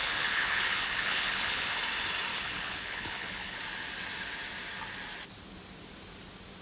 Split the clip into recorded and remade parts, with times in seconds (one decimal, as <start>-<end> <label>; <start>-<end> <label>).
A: 0.0-1.7 remade; 1.7-2.3 recorded; 2.3-3.6 remade; 3.6-6.6 recorded